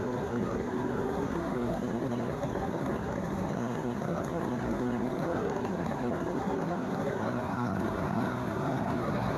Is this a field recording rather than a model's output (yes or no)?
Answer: no